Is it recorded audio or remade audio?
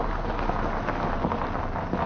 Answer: recorded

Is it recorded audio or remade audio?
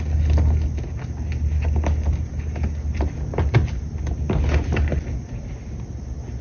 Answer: recorded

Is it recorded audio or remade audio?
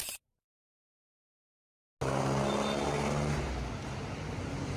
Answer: recorded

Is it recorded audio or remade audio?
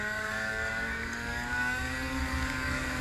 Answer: remade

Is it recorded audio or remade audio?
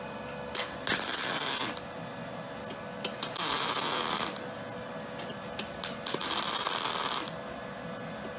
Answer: recorded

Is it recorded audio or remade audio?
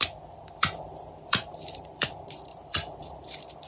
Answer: remade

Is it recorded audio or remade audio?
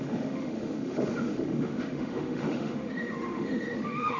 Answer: remade